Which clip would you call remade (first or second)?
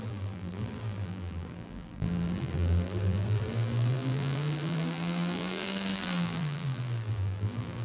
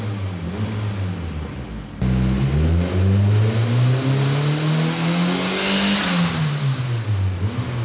first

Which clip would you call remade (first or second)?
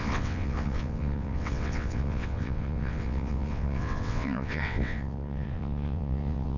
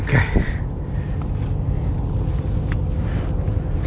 first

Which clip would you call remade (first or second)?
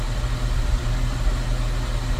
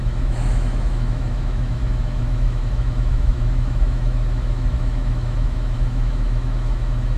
second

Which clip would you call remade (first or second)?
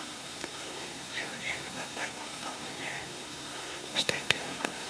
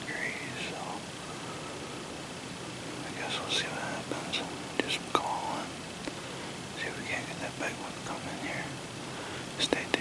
first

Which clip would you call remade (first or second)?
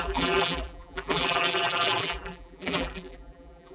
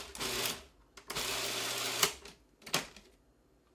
first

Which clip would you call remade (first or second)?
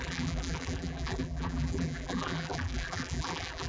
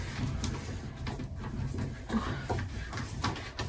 first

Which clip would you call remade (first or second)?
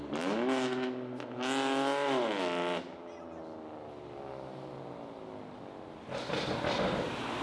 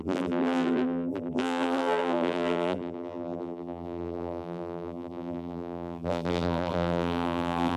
second